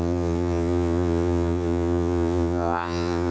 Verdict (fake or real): fake